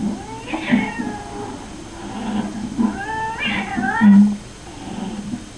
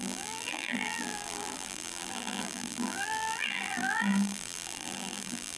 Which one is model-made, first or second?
second